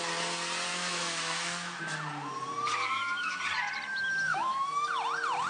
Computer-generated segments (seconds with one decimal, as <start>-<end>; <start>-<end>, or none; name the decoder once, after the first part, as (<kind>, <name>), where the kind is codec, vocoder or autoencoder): 0.7-1.8 (autoencoder, DAC-VAE); 2.9-3.4; 4.3-4.9

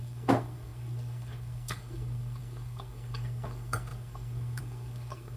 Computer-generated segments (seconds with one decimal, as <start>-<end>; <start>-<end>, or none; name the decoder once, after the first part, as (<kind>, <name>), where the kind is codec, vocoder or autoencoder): 0.0-5.4 (codec, SNAC)

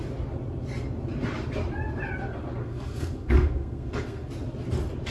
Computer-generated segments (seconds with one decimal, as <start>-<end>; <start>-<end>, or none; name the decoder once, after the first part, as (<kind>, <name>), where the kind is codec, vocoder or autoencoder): 2.6-4.3 (codec, SNAC)

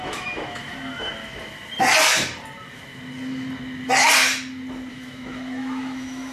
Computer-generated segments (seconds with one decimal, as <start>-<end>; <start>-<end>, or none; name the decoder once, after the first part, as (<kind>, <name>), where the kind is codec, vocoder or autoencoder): 0.0-1.1 (autoencoder, DAC-VAE); 4.9-6.3

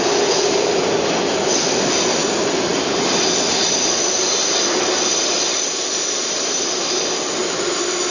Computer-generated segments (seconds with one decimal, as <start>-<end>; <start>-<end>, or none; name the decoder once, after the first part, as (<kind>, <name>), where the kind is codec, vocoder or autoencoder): none